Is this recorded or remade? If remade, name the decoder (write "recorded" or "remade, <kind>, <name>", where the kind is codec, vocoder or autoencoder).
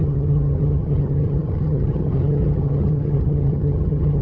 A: remade, vocoder, HiFi-GAN